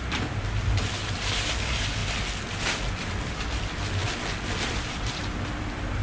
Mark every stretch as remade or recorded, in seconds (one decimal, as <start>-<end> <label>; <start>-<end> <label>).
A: 0.0-2.0 remade; 2.0-3.1 recorded; 3.1-4.0 remade; 4.0-4.7 recorded; 4.7-6.0 remade